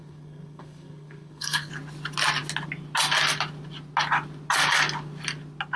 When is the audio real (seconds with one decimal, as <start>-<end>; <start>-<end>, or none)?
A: 1.7-5.8